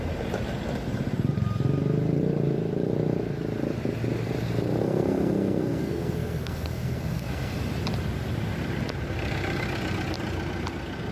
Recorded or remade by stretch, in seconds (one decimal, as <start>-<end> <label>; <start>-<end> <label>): 0.0-4.8 recorded; 4.8-7.5 remade; 7.5-11.1 recorded